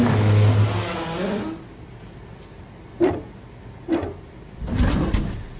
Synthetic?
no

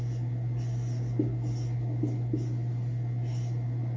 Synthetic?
no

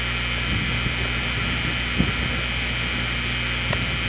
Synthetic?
no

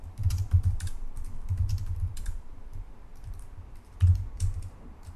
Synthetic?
yes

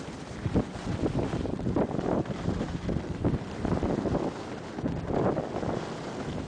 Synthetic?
no